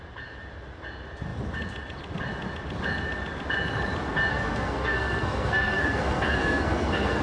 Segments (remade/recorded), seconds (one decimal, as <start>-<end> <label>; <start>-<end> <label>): 0.0-4.3 recorded; 4.3-7.2 remade